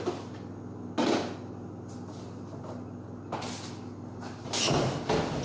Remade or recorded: recorded